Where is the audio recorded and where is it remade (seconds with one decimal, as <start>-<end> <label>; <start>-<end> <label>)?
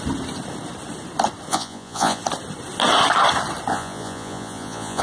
0.0-1.5 recorded; 1.5-2.2 remade; 2.2-3.7 recorded; 3.7-5.0 remade